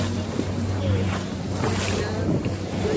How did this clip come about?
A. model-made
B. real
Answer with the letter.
B